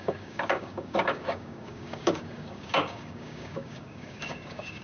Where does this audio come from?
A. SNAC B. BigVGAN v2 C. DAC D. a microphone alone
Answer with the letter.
C